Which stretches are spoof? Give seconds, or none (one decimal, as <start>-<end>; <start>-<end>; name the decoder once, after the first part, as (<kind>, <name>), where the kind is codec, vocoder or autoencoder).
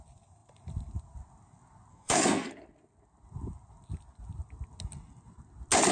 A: 1.9-2.5 (codec, SNAC)